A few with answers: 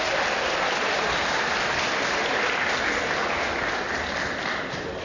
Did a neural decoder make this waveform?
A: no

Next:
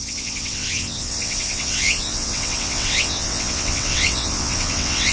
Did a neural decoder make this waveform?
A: yes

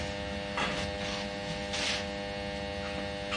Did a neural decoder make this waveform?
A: no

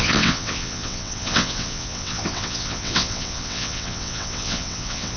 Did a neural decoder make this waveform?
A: yes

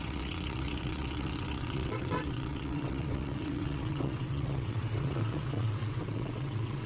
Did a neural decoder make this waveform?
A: yes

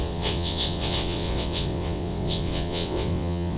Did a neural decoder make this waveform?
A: yes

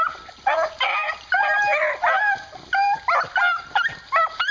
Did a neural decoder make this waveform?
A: no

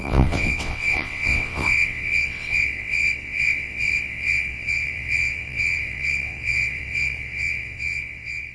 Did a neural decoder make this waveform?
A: yes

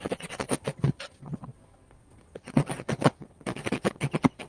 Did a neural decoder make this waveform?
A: yes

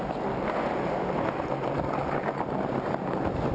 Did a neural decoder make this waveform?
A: no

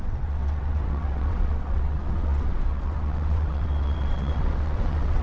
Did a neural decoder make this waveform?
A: yes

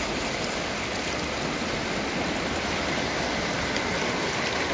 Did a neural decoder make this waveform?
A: no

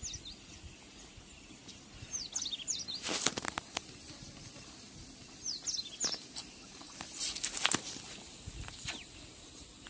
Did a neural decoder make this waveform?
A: no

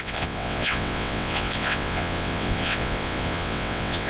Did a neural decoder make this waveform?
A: yes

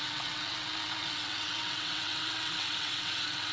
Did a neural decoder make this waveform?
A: yes